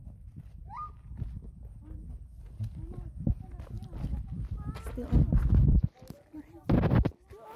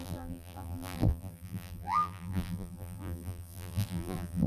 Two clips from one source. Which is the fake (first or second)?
second